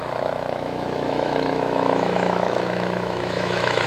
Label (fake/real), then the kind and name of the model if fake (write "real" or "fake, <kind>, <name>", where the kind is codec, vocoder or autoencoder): fake, autoencoder, DAC-VAE